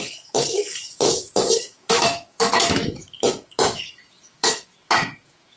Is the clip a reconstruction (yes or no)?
yes